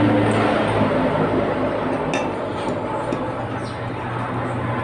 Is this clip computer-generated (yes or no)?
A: no